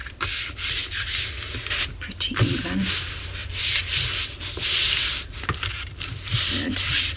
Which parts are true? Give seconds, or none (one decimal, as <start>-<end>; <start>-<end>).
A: 2.9-3.4